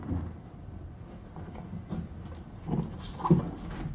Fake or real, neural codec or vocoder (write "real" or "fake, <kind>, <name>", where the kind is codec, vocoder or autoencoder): real